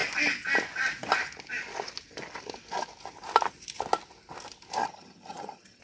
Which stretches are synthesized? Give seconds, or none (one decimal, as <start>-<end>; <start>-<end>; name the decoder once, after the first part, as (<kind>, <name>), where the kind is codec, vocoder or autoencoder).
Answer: 4.8-5.8 (vocoder, HiFi-GAN)